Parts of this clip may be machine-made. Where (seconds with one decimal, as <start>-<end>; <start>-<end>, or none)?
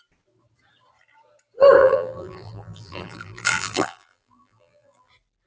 1.8-5.1